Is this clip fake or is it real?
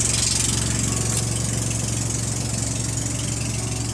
real